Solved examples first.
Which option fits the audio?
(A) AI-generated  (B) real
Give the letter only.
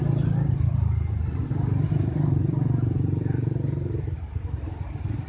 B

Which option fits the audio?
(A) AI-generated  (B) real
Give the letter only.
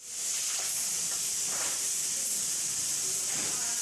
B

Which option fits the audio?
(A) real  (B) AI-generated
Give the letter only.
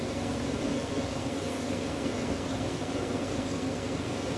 B